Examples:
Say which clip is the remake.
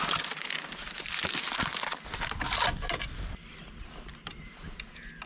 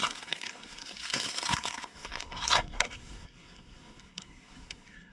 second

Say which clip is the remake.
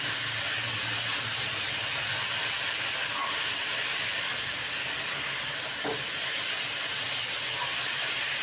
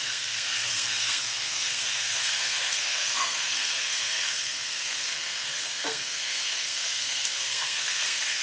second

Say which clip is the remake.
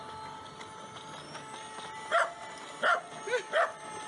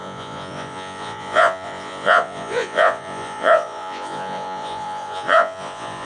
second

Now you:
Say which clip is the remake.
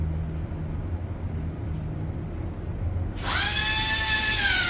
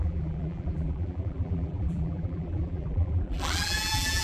second